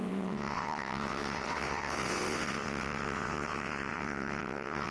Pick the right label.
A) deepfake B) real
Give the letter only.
A